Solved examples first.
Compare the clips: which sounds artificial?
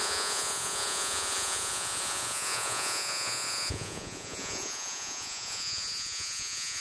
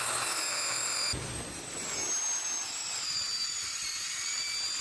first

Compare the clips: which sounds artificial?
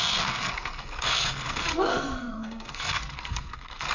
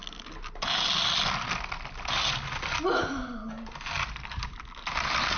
first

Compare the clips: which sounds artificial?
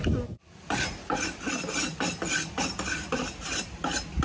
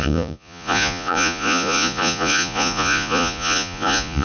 second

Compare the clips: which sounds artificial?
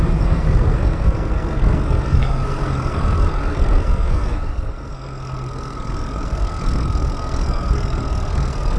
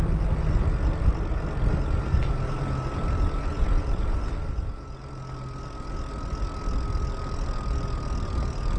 first